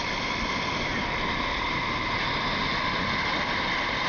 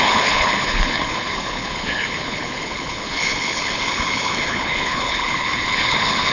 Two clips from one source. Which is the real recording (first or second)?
first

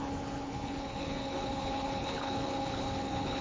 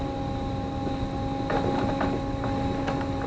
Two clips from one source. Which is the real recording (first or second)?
second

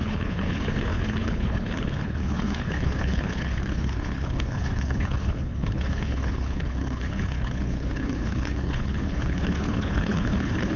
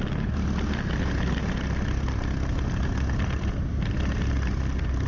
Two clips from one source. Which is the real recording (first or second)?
second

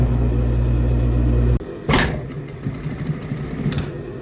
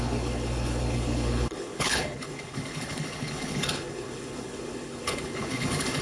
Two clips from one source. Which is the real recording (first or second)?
first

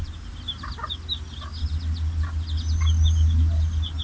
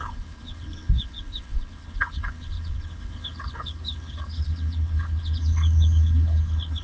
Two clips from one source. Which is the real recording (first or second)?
first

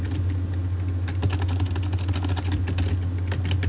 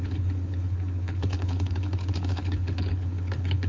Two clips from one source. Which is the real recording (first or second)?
first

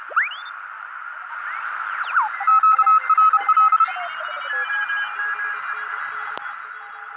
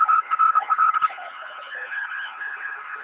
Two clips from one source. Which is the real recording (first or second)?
first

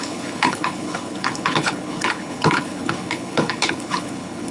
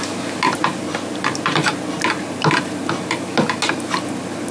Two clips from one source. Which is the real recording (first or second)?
second